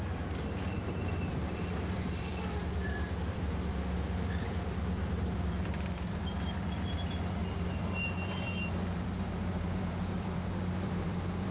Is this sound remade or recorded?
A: remade